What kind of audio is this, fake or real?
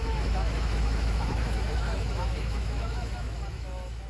fake